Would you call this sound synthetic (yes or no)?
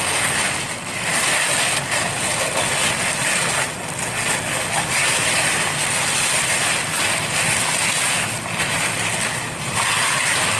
no